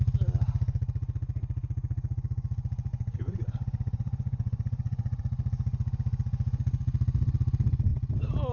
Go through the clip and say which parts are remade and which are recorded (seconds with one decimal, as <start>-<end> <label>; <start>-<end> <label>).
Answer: 0.0-2.9 recorded; 2.9-5.2 remade; 5.2-8.5 recorded